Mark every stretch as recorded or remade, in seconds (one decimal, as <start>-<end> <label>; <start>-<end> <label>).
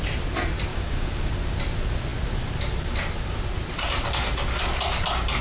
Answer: 0.0-0.7 recorded; 0.7-1.3 remade; 1.3-5.4 recorded